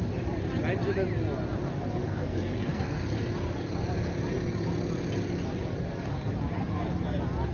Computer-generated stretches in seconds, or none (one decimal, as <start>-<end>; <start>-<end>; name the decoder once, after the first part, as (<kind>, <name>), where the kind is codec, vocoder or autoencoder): 2.0-3.0 (codec, SNAC)